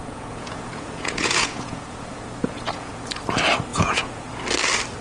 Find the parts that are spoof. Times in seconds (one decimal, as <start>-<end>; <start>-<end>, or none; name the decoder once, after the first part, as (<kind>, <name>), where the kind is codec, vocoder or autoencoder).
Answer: 0.0-3.0 (vocoder, Vocos); 3.7-4.3